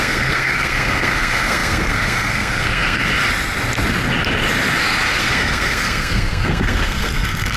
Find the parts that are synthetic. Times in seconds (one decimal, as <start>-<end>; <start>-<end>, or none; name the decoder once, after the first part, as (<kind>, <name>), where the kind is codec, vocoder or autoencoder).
0.0-3.1 (codec, SNAC); 5.2-7.6